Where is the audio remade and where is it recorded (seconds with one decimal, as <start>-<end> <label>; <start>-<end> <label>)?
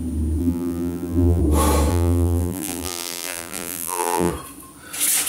0.0-0.4 recorded; 0.4-1.4 remade; 1.4-1.9 recorded; 1.9-4.3 remade; 4.3-5.3 recorded